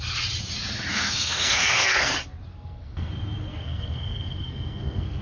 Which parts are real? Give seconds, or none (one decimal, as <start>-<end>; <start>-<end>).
0.0-0.9; 2.1-2.5; 3.1-3.5